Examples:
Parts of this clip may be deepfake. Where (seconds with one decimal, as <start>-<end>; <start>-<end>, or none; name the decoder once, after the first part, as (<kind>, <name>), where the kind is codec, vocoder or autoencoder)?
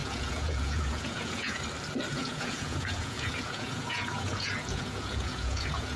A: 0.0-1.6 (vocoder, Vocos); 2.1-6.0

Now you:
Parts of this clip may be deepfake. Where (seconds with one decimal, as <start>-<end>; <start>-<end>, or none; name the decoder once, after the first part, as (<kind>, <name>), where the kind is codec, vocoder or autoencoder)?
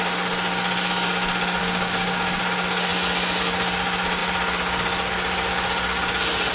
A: 1.6-2.4 (codec, DAC)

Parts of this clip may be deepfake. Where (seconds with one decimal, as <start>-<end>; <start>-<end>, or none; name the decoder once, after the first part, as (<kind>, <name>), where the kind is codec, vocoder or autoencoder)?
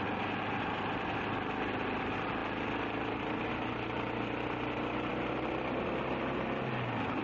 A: none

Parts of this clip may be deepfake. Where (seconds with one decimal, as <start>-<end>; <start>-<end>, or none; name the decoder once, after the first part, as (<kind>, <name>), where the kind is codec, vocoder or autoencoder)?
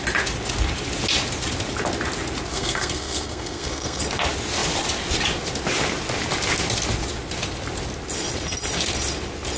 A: 2.5-4.0 (codec, SNAC)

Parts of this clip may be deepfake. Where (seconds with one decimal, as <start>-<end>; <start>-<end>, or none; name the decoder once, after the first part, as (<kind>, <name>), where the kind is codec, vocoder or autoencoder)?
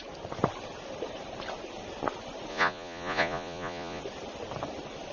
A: 2.5-4.0 (vocoder, Vocos)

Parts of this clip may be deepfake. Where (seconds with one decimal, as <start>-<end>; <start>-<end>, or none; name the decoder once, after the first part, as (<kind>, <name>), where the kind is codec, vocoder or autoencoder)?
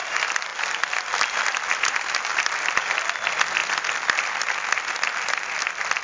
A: none